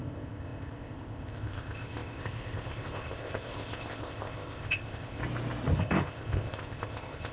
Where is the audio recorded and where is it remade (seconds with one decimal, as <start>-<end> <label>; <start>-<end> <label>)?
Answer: 0.0-5.2 remade; 5.2-5.8 recorded; 5.8-7.3 remade